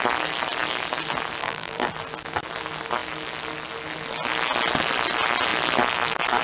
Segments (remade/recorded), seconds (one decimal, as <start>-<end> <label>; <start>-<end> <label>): 0.0-1.4 recorded; 1.4-1.9 remade; 1.9-6.4 recorded